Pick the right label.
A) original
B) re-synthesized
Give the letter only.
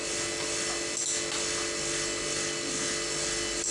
A